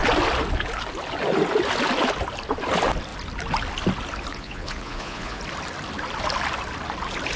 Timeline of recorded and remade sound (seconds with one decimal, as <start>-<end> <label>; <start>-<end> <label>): 0.0-4.3 recorded; 4.3-5.4 remade; 5.4-7.4 recorded